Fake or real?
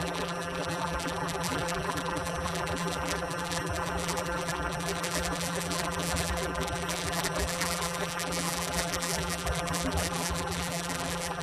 fake